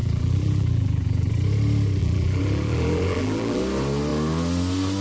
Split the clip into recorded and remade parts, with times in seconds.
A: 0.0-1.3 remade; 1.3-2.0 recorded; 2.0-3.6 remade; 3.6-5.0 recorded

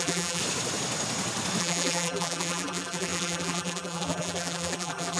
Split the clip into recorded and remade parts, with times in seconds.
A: 0.0-0.4 remade; 0.4-1.6 recorded; 1.6-5.2 remade

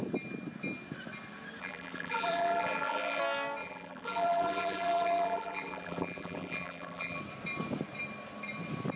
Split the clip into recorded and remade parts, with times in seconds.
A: 0.0-1.6 recorded; 1.6-3.2 remade; 3.2-3.6 recorded; 3.6-7.2 remade; 7.2-9.0 recorded

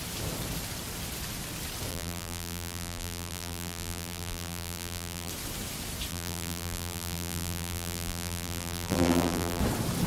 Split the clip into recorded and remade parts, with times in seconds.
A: 0.0-1.9 recorded; 1.9-5.3 remade; 5.3-6.1 recorded; 6.1-9.6 remade; 9.6-10.1 recorded

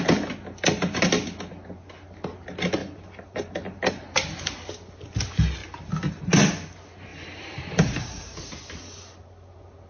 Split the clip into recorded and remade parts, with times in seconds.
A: 0.0-2.8 recorded; 2.8-3.9 remade; 3.9-7.1 recorded; 7.1-8.5 remade; 8.5-9.9 recorded

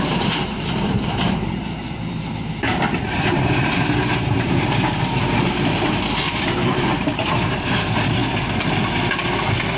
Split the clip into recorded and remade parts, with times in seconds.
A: 0.0-8.2 remade; 8.2-9.8 recorded

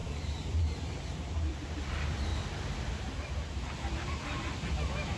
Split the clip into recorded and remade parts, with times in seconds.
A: 0.0-1.8 remade; 1.8-5.2 recorded